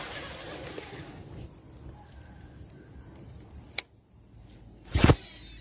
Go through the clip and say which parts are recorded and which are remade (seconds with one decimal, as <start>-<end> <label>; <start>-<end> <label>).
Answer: 0.0-5.6 recorded